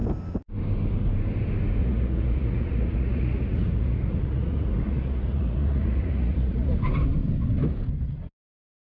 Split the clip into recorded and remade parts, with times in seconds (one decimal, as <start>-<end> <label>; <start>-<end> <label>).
0.0-1.8 recorded; 1.8-6.7 remade; 6.7-8.9 recorded